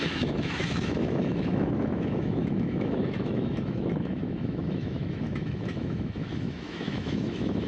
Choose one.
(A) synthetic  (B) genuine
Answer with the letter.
A